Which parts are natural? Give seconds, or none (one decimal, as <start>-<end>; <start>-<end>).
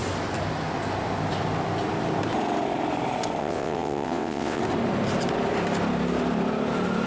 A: 0.0-3.4; 4.6-7.1